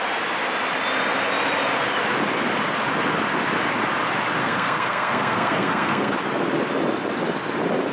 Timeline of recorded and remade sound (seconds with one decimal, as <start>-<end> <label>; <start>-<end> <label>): 0.0-4.4 recorded; 4.4-6.1 remade; 6.1-7.9 recorded